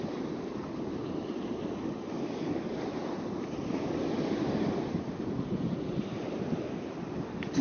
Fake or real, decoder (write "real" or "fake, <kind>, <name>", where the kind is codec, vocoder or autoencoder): real